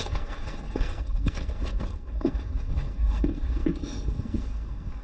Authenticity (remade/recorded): remade